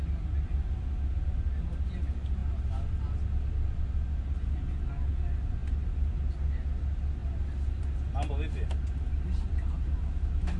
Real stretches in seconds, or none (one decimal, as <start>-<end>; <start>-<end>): 0.0-10.6